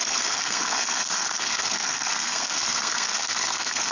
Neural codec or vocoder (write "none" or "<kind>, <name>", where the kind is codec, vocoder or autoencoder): codec, SNAC